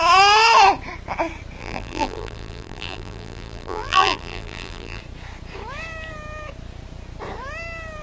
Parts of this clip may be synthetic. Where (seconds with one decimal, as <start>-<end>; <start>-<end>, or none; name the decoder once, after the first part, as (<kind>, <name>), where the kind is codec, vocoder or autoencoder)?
1.6-5.0 (vocoder, BigVGAN v2)